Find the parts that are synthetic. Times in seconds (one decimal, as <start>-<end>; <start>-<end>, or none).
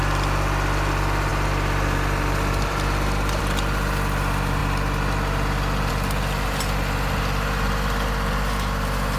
none